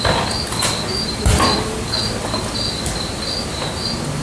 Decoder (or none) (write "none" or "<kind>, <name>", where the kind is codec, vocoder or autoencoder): none